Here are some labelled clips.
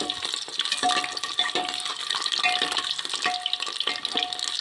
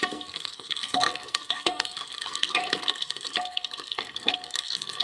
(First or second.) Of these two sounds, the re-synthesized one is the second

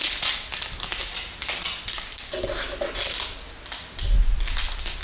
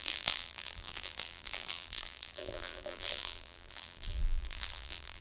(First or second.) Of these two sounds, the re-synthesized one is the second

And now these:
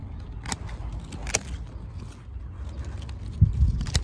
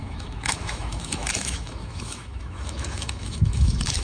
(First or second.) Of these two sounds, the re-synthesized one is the second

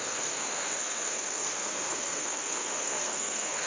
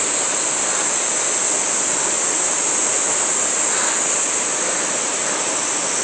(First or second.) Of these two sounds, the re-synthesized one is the first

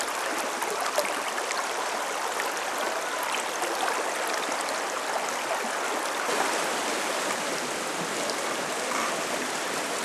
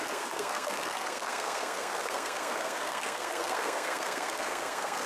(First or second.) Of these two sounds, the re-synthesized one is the second